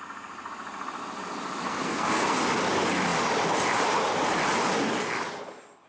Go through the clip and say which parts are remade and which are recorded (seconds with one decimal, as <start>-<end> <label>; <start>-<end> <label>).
0.0-1.7 recorded; 1.7-2.4 remade; 2.4-5.9 recorded

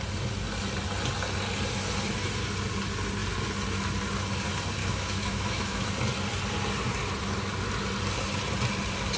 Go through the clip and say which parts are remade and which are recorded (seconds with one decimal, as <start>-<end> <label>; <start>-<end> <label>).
0.0-4.8 recorded; 4.8-5.9 remade; 5.9-9.2 recorded

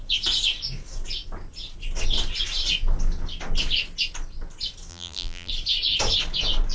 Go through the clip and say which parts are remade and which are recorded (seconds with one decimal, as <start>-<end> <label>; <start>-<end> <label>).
0.0-4.9 recorded; 4.9-5.5 remade; 5.5-6.7 recorded

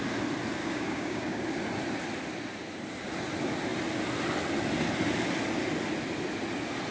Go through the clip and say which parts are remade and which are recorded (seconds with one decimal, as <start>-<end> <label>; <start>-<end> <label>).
0.0-0.6 recorded; 0.6-1.4 remade; 1.4-6.9 recorded

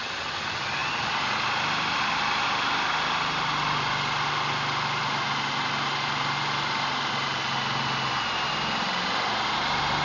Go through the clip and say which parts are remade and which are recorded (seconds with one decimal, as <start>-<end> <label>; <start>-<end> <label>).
0.0-10.0 recorded

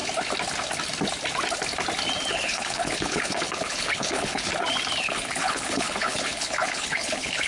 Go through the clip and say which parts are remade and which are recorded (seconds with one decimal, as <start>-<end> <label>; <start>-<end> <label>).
0.0-2.3 recorded; 2.3-4.5 remade; 4.5-5.0 recorded; 5.0-7.5 remade

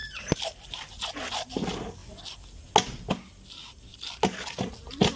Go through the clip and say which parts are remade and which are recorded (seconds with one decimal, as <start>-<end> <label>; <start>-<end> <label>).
0.0-5.2 recorded

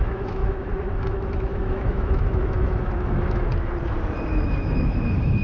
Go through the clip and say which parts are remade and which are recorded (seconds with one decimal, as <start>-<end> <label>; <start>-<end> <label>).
0.0-3.5 remade; 3.5-4.3 recorded; 4.3-5.4 remade